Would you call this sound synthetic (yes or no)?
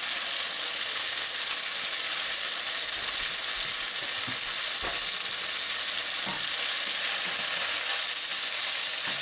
no